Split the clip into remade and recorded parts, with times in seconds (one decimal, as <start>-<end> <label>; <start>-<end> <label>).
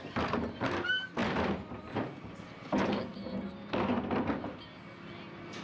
0.0-5.6 recorded